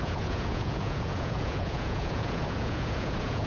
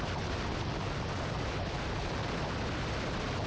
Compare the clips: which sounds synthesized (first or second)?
first